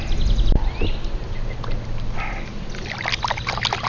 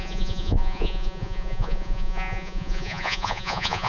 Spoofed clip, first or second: second